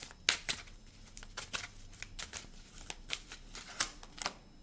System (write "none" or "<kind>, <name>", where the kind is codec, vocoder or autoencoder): none